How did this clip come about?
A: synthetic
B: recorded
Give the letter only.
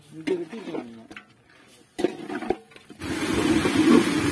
B